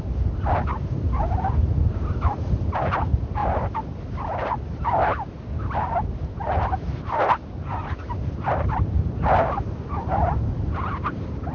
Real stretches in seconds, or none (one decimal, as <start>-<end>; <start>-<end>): 0.0-11.5